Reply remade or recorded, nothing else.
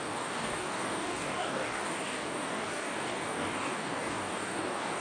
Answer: remade